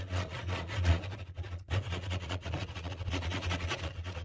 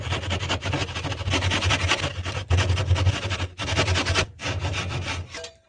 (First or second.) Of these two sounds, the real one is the second